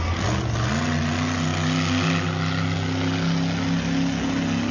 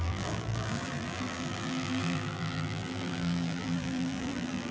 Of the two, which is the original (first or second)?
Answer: first